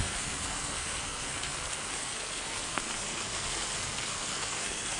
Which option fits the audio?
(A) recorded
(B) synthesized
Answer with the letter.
B